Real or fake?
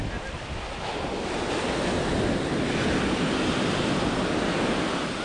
real